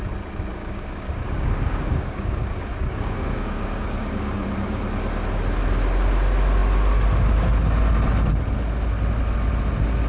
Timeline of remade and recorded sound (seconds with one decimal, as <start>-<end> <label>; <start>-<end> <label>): 0.0-0.5 recorded; 0.5-4.8 remade; 4.8-10.1 recorded